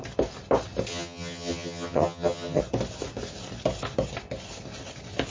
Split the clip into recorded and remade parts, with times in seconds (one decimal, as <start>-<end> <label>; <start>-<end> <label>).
0.0-0.9 recorded; 0.9-2.6 remade; 2.6-5.3 recorded